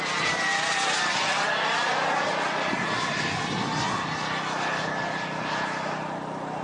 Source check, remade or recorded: recorded